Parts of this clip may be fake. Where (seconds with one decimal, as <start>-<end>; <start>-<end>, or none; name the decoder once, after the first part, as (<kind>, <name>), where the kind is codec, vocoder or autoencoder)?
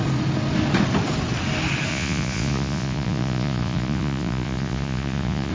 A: 1.9-5.5 (vocoder, Vocos)